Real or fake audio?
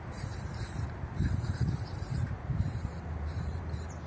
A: fake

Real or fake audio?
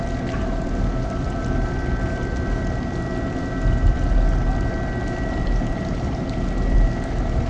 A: real